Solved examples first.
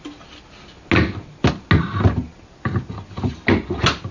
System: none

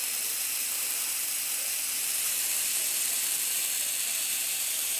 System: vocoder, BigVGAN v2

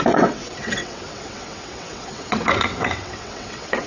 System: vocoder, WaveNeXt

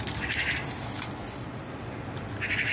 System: none